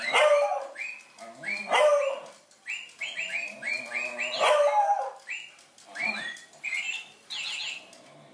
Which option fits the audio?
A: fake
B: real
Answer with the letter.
B